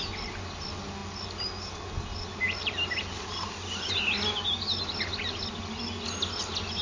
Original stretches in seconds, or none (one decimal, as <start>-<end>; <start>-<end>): 0.0-6.8